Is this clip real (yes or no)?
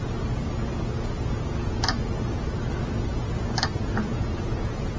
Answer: yes